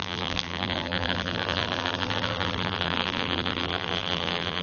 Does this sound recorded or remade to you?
remade